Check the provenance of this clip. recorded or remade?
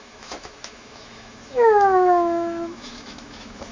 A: remade